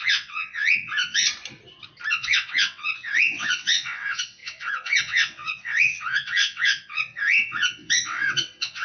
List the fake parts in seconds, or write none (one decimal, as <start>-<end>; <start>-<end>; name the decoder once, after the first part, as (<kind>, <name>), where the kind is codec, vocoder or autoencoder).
0.0-1.3 (vocoder, WaveNeXt); 2.1-8.8